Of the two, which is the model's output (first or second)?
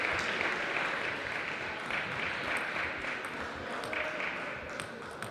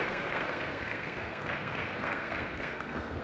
second